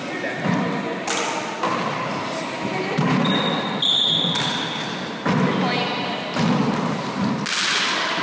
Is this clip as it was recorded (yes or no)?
yes